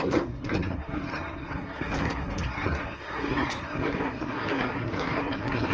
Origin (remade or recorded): remade